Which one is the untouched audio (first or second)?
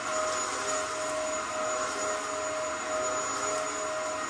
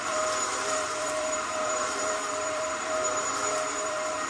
first